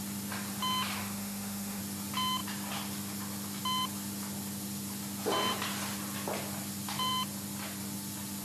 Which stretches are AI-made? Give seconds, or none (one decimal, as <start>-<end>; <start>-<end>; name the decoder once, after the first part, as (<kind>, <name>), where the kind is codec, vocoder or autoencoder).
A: 1.0-1.8 (autoencoder, DAC-VAE)